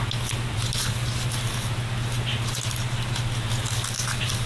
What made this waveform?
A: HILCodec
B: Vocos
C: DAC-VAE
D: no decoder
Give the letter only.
D